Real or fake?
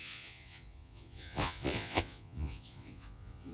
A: fake